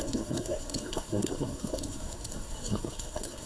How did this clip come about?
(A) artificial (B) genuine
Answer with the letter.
A